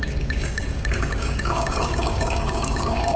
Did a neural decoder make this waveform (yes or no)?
yes